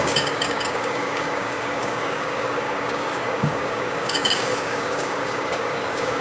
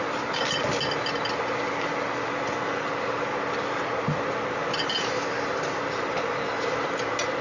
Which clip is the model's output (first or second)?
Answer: first